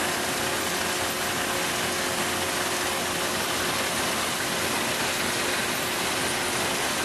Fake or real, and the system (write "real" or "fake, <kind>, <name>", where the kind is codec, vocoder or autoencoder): real